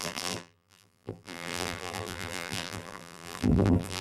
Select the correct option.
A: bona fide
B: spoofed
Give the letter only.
B